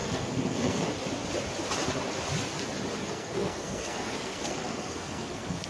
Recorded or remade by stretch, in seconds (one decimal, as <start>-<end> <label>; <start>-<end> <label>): 0.0-0.9 remade; 0.9-3.0 recorded; 3.0-5.7 remade